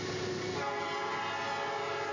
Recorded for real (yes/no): yes